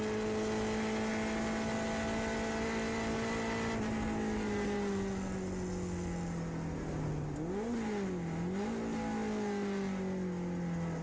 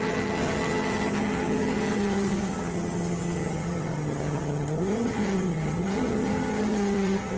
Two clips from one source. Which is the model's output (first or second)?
second